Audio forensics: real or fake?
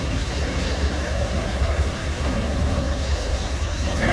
fake